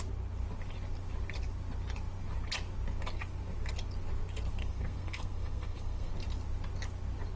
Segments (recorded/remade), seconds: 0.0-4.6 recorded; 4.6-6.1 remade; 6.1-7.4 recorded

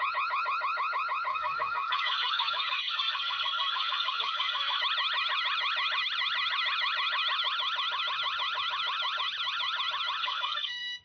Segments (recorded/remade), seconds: 0.0-1.3 recorded; 1.3-4.8 remade; 4.8-10.2 recorded; 10.2-11.0 remade

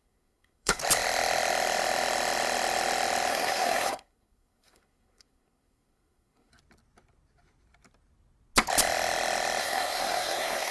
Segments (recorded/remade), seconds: 0.0-0.8 remade; 0.8-3.3 recorded; 3.3-6.5 remade; 6.5-9.6 recorded; 9.6-10.7 remade

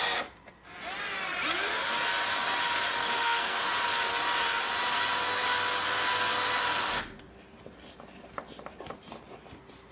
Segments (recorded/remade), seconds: 0.0-3.0 recorded; 3.0-3.7 remade; 3.7-9.9 recorded

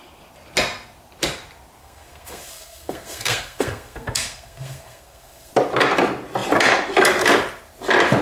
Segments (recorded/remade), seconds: 0.0-1.8 recorded; 1.8-5.5 remade; 5.5-8.2 recorded

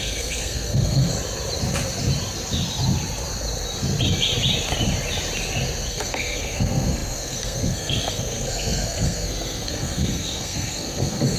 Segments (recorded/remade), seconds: 0.0-1.1 remade; 1.1-5.9 recorded; 5.9-11.4 remade